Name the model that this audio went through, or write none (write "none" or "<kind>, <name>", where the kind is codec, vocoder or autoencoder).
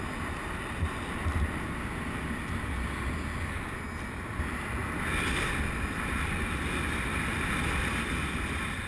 none